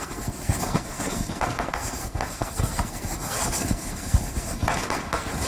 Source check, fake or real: fake